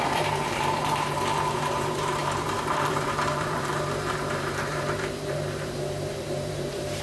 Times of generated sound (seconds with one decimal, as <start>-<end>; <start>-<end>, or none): 0.0-7.0

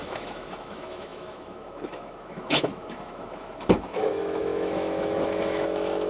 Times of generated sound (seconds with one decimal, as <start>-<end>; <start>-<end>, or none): 0.0-6.1